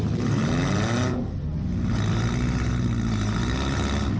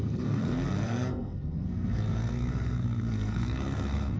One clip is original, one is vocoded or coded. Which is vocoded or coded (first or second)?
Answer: second